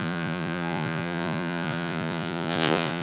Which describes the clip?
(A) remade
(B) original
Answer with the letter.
A